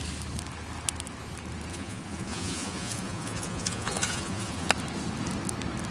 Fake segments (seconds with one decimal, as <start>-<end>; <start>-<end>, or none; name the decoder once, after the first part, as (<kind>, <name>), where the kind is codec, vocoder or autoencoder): 1.7-4.7 (vocoder, Vocos)

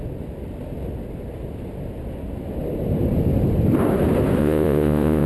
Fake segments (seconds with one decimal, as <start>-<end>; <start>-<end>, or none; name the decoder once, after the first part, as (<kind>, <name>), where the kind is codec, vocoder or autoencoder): 4.4-5.3 (vocoder, Vocos)

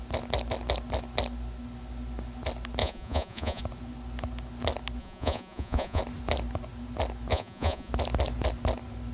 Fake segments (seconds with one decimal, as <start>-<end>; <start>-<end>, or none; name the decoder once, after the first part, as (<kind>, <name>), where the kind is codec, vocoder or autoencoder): 2.8-3.6 (vocoder, Vocos); 5.0-6.0; 7.3-7.9

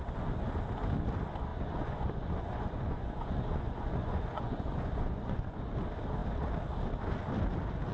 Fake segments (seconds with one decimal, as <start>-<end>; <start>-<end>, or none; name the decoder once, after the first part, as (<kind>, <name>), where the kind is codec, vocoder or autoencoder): 1.5-5.6 (vocoder, Vocos)

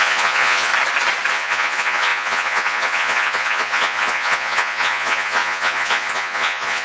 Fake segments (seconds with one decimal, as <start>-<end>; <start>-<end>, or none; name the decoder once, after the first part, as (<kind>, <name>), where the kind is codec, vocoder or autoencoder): 0.0-0.7 (vocoder, Vocos); 1.3-6.8

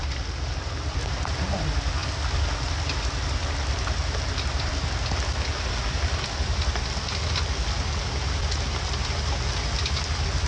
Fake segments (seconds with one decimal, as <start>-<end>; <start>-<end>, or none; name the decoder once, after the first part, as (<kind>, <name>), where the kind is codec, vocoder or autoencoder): none

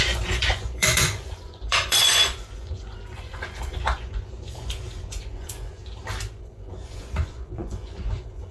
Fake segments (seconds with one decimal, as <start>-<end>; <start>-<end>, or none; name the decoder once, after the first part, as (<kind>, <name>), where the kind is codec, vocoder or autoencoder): 0.0-5.8 (vocoder, Vocos); 6.3-8.5